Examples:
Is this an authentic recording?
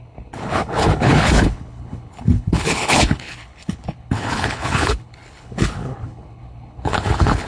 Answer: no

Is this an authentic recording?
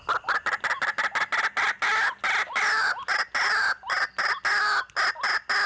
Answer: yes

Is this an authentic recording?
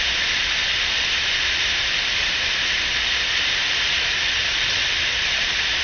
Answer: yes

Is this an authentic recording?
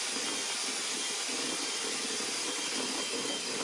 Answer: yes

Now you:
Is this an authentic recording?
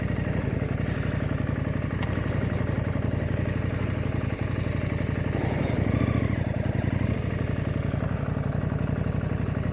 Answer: yes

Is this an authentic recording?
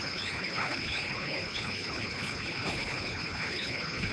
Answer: no